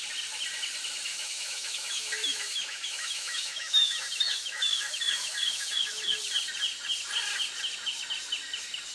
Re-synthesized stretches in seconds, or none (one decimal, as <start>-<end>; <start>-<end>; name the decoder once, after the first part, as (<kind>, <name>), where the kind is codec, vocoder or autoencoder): 1.1-6.2 (autoencoder, DAC-VAE)